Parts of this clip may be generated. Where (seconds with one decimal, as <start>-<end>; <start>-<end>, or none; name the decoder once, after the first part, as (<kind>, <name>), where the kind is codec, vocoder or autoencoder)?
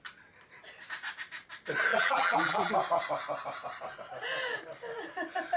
1.9-2.7 (vocoder, BigVGAN v2)